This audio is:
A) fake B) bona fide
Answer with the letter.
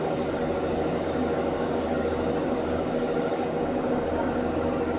A